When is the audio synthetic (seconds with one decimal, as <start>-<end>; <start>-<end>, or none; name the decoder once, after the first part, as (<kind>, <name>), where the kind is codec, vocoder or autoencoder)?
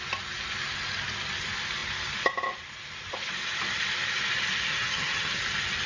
4.7-5.4 (vocoder, HiFi-GAN)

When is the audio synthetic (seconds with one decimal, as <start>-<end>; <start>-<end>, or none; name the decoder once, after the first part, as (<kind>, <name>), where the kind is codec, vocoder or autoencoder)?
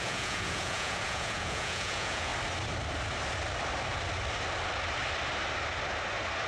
0.0-2.3 (vocoder, Vocos)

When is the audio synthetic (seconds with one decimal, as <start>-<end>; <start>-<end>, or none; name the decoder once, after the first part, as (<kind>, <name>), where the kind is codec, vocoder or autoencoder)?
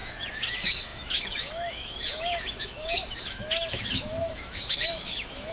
0.0-5.5 (autoencoder, DAC-VAE)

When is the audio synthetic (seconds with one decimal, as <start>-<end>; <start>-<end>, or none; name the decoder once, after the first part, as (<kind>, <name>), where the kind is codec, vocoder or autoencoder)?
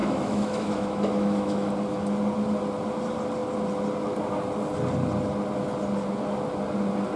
0.0-1.7 (autoencoder, DAC-VAE)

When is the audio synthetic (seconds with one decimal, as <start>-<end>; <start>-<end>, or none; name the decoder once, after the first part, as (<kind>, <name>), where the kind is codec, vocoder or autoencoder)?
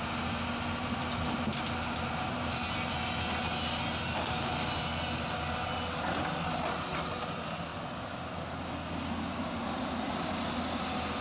none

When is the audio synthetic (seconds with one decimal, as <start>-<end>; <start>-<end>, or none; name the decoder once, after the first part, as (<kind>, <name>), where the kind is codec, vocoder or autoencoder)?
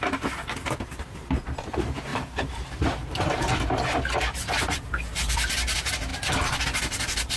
2.1-3.4 (vocoder, BigVGAN v2)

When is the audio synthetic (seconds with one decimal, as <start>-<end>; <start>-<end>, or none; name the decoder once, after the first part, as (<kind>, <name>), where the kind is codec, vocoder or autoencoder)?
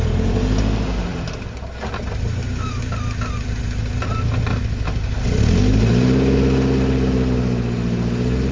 none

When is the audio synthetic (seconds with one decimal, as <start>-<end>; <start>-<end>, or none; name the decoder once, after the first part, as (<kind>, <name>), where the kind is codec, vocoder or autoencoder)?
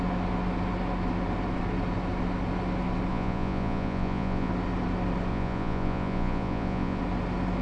3.1-4.5 (vocoder, Vocos); 5.3-7.0